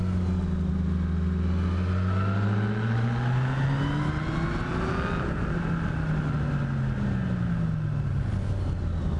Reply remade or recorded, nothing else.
recorded